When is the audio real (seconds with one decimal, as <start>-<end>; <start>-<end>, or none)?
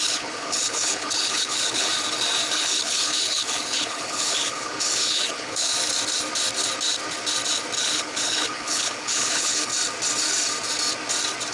1.9-2.5; 5.7-7.8; 9.7-11.5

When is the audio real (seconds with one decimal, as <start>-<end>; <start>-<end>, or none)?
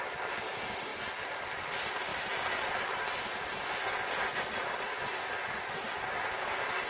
0.0-6.9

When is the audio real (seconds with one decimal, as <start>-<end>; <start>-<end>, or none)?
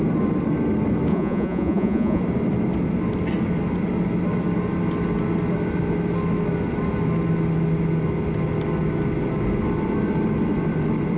0.0-1.1; 2.2-11.2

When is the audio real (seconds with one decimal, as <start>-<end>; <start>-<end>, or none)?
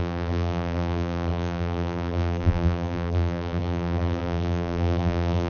none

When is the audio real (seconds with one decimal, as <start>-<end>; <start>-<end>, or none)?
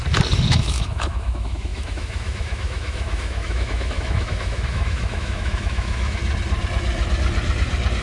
0.0-0.5; 6.2-8.0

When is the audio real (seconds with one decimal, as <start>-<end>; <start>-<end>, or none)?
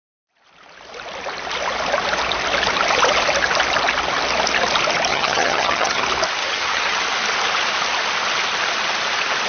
0.0-5.1; 6.0-6.4; 7.0-9.5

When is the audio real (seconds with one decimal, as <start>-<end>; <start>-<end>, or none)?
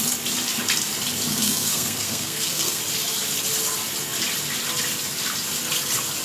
0.0-1.3; 2.8-6.2